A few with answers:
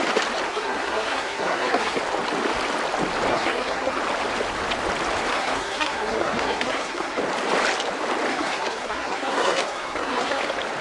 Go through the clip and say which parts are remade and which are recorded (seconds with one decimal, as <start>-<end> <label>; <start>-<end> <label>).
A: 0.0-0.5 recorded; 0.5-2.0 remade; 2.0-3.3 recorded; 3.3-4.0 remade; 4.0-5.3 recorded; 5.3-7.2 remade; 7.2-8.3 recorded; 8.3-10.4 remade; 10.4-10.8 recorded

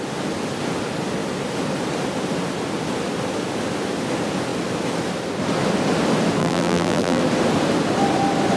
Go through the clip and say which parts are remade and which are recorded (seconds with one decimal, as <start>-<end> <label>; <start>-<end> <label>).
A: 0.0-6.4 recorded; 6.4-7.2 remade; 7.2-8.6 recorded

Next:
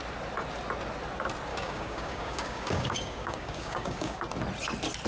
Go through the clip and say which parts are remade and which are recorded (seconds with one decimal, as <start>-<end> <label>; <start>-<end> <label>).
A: 0.0-1.5 recorded; 1.5-4.2 remade; 4.2-5.1 recorded

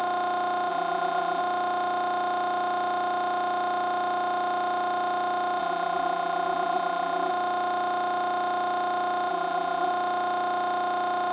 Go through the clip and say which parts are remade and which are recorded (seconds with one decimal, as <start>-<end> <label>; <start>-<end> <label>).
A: 0.0-0.7 recorded; 0.7-1.4 remade; 1.4-5.6 recorded; 5.6-7.3 remade; 7.3-9.3 recorded; 9.3-9.9 remade; 9.9-11.3 recorded